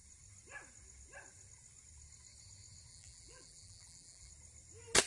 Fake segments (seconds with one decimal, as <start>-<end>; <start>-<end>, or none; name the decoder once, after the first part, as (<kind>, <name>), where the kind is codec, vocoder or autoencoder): 2.9-4.3 (vocoder, BigVGAN v2)